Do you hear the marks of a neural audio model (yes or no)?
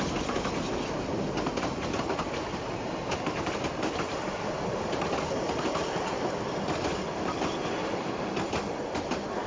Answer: no